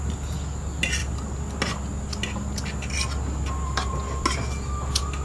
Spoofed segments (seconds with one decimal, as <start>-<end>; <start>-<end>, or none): none